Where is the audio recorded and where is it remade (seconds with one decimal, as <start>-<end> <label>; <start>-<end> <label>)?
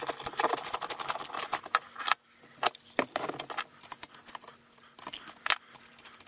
0.0-6.3 recorded